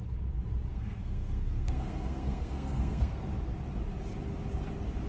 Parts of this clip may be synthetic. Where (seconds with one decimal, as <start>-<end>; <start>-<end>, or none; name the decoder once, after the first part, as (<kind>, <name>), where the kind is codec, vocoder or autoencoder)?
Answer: 0.7-3.2 (codec, SNAC)